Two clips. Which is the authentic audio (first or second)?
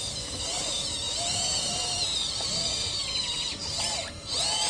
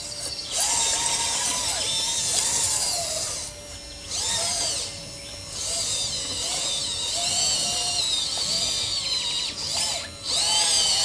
second